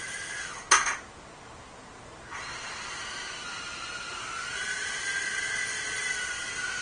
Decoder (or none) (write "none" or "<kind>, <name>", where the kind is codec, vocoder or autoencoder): none